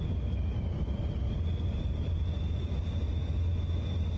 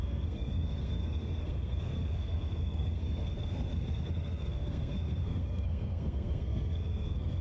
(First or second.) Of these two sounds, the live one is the first